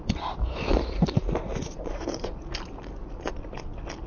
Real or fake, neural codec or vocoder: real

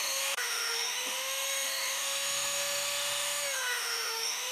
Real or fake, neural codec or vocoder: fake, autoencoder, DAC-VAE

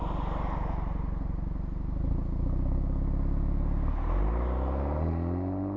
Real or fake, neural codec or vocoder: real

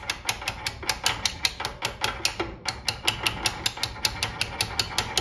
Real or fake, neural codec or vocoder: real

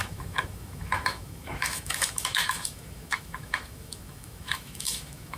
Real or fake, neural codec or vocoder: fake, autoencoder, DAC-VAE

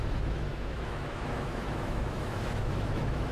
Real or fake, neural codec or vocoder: fake, autoencoder, DAC-VAE